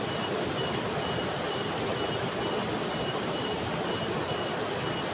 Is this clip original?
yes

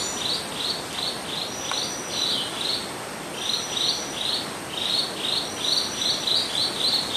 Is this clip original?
yes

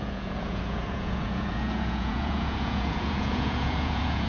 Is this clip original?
no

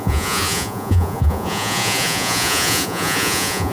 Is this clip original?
no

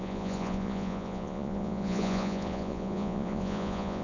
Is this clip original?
no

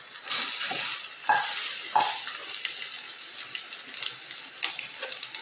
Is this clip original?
yes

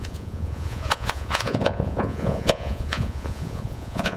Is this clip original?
no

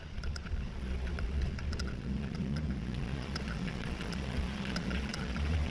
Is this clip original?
no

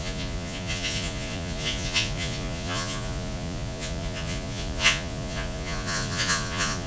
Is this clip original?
no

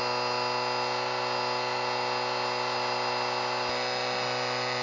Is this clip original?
yes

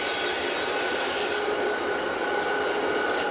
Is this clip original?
yes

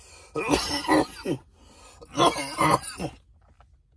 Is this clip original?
yes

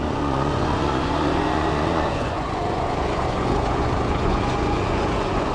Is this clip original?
no